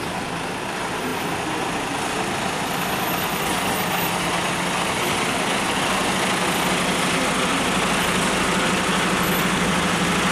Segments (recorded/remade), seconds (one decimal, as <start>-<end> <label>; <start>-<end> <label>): 0.0-10.3 recorded